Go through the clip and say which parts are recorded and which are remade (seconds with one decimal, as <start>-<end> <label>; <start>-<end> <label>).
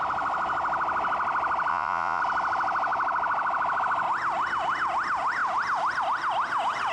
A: 0.0-1.7 recorded; 1.7-2.2 remade; 2.2-6.9 recorded